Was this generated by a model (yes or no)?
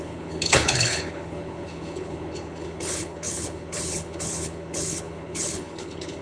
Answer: yes